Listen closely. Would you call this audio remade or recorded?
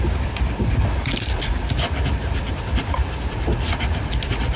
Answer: recorded